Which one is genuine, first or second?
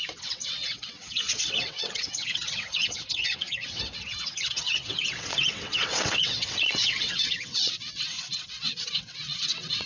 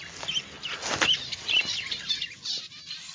second